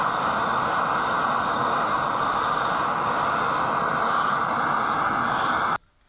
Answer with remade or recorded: recorded